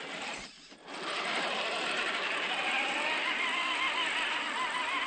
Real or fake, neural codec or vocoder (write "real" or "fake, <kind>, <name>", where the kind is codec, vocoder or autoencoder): real